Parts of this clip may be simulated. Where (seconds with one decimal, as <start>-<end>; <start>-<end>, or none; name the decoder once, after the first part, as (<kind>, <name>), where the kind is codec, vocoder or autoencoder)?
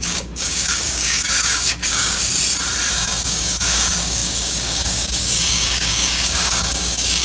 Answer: 0.0-2.3 (codec, DAC); 2.9-7.2